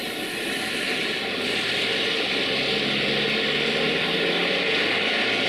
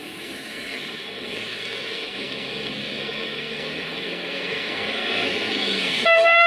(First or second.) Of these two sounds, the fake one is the second